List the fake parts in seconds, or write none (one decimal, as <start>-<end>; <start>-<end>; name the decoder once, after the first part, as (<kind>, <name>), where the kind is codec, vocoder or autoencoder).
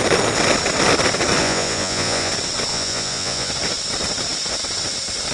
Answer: 1.4-2.3 (vocoder, Vocos); 2.7-3.5